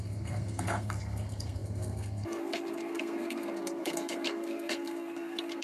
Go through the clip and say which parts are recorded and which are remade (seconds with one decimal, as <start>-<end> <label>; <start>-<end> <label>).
0.0-5.6 remade